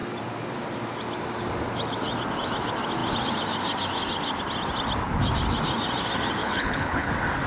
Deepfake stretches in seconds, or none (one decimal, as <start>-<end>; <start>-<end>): 6.4-7.1

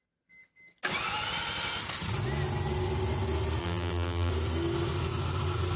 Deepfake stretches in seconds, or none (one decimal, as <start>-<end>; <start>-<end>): 3.6-4.3

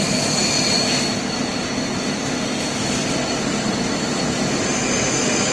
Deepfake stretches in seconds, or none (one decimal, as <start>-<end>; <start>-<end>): none

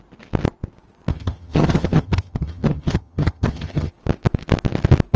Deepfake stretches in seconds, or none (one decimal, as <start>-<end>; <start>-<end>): 1.1-3.9

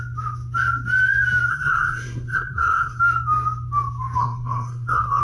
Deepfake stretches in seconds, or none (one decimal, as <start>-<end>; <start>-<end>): 1.5-3.0; 4.2-5.2

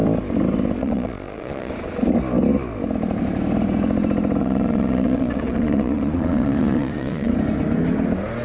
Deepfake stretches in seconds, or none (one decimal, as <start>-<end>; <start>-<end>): 0.8-1.7; 4.4-7.3